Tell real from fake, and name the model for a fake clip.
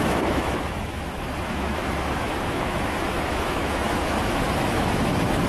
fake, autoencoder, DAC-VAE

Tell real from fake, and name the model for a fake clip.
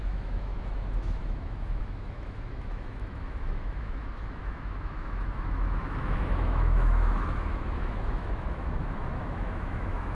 fake, autoencoder, DAC-VAE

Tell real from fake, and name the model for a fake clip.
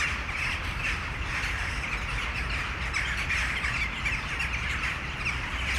real